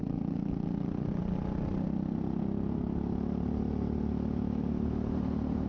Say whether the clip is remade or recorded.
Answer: recorded